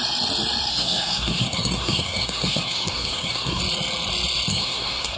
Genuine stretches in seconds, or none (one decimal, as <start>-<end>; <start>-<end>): 0.0-0.7; 3.6-4.5